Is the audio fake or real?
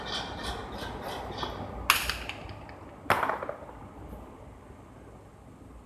real